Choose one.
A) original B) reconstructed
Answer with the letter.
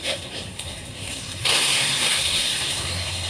B